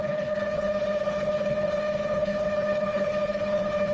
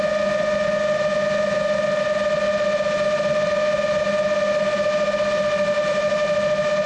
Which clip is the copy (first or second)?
first